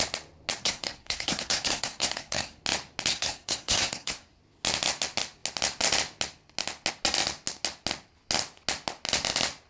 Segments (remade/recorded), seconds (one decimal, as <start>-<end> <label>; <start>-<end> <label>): 0.0-0.6 recorded; 0.6-2.6 remade; 2.6-3.1 recorded; 3.1-4.4 remade; 4.4-9.7 recorded